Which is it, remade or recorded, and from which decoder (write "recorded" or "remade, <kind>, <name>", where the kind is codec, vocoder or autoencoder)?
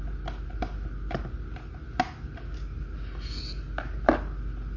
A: recorded